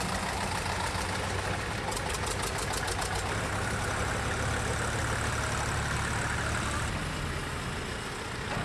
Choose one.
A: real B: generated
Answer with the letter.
A